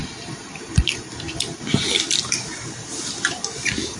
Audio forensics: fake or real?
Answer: fake